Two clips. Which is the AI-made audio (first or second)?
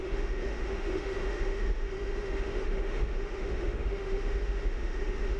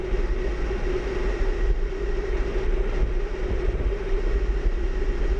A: first